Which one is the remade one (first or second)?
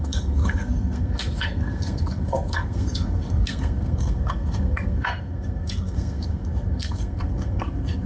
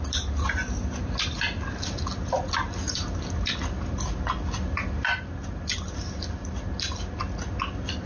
first